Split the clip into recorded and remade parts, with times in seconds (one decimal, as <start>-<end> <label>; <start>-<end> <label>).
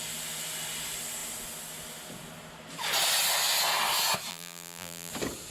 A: 0.0-4.3 recorded; 4.3-5.1 remade; 5.1-5.5 recorded